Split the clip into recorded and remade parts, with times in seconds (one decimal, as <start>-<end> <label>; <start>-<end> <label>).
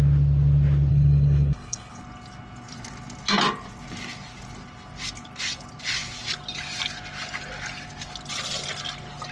0.0-0.9 recorded; 0.9-2.0 remade; 2.0-9.3 recorded